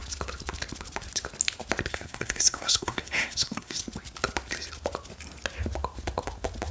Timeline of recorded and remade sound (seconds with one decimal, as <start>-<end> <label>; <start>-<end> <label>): 0.0-1.9 recorded; 1.9-3.8 remade; 3.8-6.7 recorded